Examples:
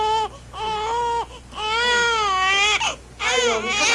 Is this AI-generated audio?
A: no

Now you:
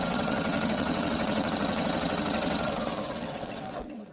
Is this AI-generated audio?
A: yes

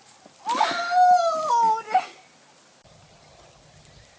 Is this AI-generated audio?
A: no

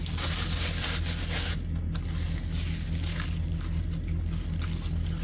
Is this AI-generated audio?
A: no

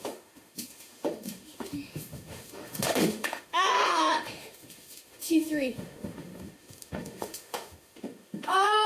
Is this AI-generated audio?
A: yes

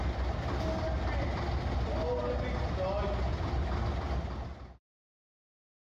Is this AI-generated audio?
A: no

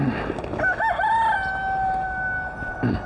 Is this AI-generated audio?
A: no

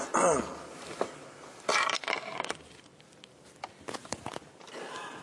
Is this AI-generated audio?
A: no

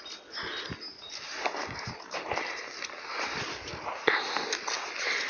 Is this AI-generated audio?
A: no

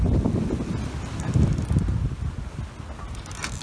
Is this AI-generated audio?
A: no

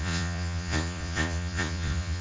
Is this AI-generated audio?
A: yes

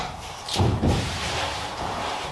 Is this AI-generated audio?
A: yes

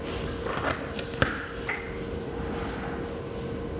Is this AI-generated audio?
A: no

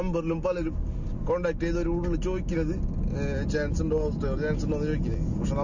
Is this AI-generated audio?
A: no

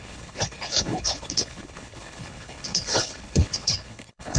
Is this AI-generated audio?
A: yes